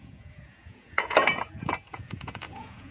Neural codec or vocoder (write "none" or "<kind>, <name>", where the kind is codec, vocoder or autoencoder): vocoder, Vocos